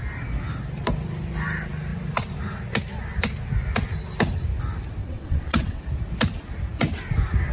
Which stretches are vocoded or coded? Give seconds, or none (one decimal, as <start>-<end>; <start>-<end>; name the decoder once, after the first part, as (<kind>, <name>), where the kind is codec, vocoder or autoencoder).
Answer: 5.0-5.8 (vocoder, WaveNeXt)